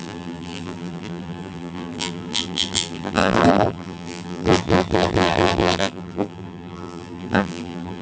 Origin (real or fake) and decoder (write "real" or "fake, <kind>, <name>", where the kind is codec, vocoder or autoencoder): fake, vocoder, BigVGAN v2